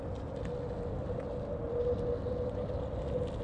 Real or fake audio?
real